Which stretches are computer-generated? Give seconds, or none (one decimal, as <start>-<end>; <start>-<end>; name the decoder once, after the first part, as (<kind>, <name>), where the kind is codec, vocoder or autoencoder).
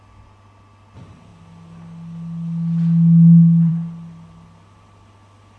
none